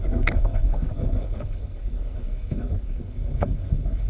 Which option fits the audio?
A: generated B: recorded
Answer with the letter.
A